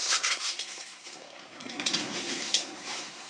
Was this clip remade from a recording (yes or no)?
yes